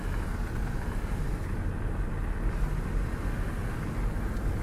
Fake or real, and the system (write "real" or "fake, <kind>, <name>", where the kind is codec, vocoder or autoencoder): real